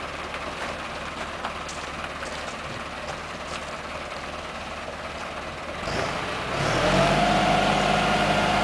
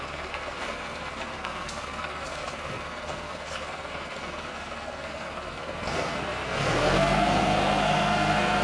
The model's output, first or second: second